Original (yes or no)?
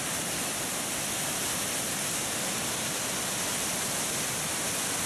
yes